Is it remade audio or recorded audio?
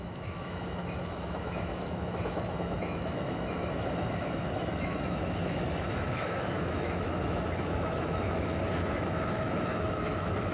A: remade